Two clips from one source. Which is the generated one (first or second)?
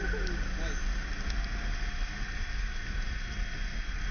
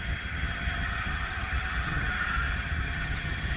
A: second